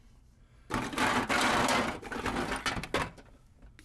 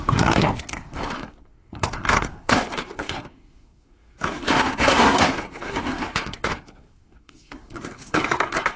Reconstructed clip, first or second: second